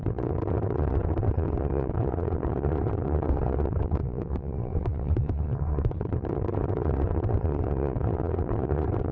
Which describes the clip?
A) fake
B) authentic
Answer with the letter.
A